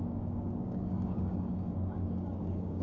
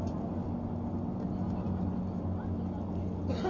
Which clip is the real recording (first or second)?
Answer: second